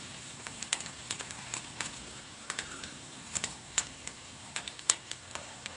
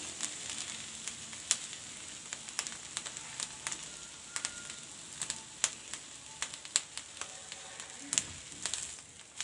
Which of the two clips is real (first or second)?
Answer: second